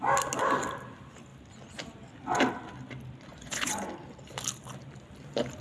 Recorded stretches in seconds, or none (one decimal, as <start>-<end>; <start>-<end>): 0.0-3.3; 3.9-5.6

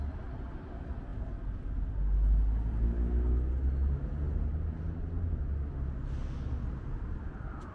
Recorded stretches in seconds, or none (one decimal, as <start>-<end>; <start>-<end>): 0.0-7.7

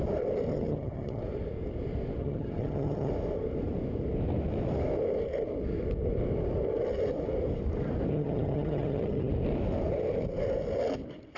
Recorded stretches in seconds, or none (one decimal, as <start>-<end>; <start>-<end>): 0.0-0.5; 1.2-2.2; 3.1-8.1; 9.3-11.4

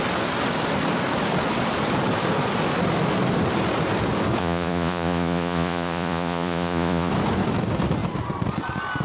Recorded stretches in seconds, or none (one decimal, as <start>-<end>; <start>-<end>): 0.0-4.4; 7.1-9.0

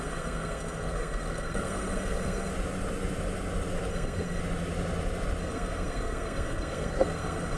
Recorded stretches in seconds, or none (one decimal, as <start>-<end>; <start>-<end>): 2.5-3.9; 4.4-5.4